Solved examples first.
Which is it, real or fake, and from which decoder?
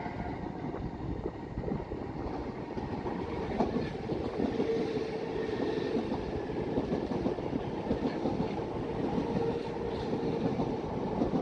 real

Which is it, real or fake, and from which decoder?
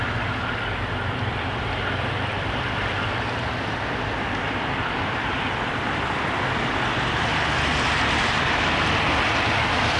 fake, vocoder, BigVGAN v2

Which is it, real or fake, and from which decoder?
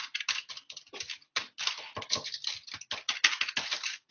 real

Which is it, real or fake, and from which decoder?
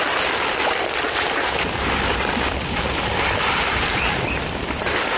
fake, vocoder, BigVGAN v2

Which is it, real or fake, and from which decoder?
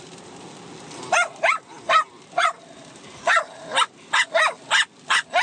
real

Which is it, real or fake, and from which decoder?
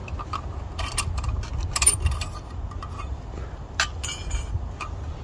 real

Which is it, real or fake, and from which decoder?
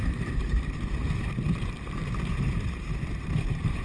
fake, vocoder, BigVGAN v2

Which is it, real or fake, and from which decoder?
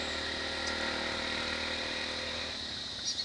real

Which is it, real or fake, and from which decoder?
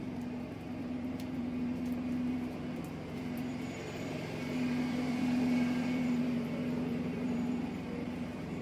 fake, vocoder, BigVGAN v2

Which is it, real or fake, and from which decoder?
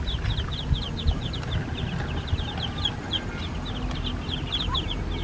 real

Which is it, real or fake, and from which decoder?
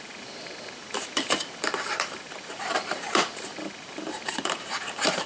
fake, vocoder, BigVGAN v2